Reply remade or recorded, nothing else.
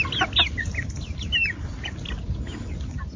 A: recorded